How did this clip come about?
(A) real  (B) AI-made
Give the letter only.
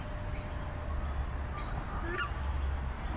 A